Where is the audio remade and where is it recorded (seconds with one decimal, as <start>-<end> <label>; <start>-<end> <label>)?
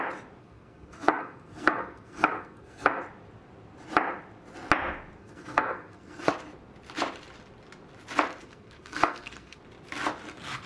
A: 0.0-0.4 recorded; 0.4-3.0 remade; 3.0-5.2 recorded; 5.2-6.3 remade; 6.3-8.4 recorded; 8.4-9.6 remade; 9.6-10.7 recorded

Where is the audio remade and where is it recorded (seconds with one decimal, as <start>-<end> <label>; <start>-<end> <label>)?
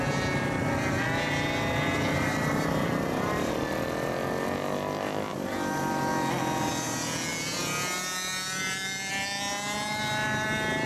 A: 0.0-10.9 recorded